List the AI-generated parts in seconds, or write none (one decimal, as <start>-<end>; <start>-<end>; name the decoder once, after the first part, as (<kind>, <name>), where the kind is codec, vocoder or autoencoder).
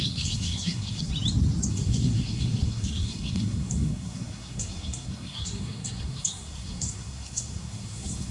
0.0-1.1 (codec, SNAC); 1.7-8.3